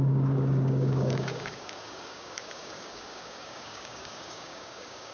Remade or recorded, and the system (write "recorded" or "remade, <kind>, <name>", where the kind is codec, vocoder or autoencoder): remade, codec, DAC